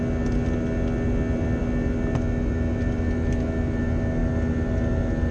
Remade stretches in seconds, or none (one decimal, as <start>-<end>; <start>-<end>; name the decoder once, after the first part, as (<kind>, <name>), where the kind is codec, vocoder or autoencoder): none